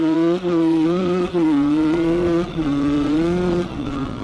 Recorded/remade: remade